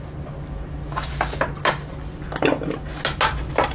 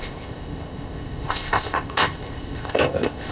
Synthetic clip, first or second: second